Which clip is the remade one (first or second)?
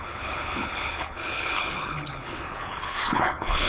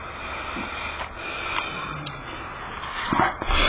first